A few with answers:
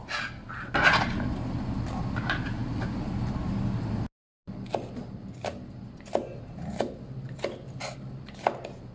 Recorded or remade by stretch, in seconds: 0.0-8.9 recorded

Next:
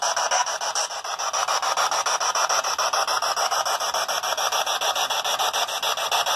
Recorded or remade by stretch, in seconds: 0.0-6.4 recorded

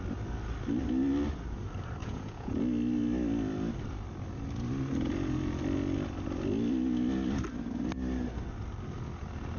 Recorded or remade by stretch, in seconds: 0.0-2.0 recorded; 2.0-2.6 remade; 2.6-9.6 recorded

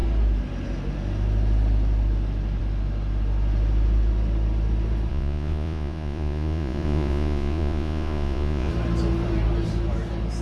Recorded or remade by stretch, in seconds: 0.0-5.1 recorded; 5.1-8.7 remade; 8.7-10.4 recorded

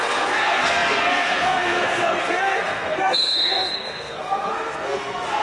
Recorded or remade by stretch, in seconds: 0.0-5.4 remade